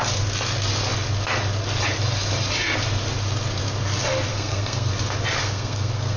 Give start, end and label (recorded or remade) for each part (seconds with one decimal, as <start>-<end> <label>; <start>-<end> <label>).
0.0-4.3 recorded; 4.3-4.9 remade; 4.9-5.4 recorded; 5.4-6.2 remade